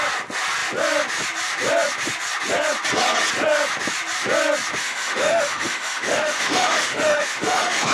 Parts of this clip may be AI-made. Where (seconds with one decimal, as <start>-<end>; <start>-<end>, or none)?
4.8-7.9